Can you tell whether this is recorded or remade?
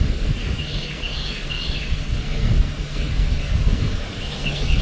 remade